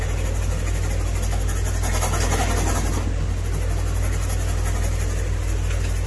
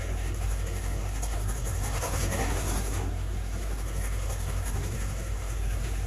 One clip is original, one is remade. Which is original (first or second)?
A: first